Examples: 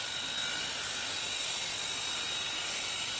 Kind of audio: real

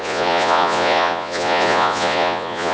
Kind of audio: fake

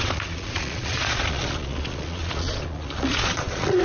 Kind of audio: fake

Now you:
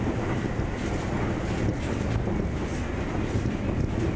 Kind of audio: real